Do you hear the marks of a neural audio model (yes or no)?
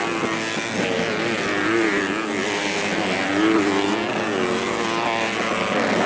no